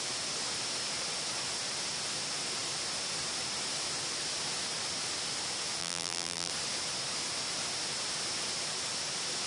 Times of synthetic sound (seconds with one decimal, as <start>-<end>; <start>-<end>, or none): 5.8-6.5